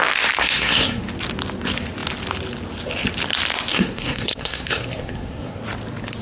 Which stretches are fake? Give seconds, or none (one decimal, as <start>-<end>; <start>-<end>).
0.4-1.0; 3.7-5.6